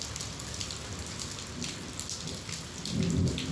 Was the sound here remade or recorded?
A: recorded